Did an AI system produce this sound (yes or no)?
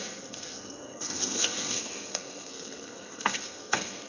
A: yes